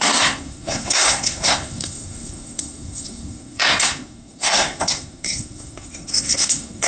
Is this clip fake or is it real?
fake